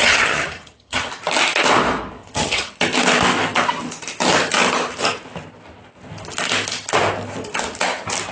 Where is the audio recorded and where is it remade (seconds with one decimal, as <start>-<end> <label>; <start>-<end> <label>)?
0.0-1.1 remade; 1.1-2.2 recorded; 2.2-2.7 remade; 2.7-8.3 recorded